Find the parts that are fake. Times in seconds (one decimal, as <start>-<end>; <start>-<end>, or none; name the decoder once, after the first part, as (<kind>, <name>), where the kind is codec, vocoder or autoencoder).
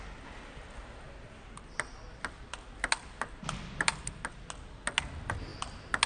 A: none